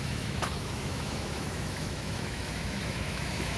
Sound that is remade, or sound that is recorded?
remade